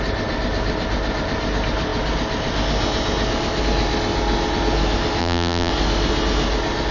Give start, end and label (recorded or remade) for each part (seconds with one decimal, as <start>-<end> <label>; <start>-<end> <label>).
0.0-5.2 recorded; 5.2-5.7 remade; 5.7-6.9 recorded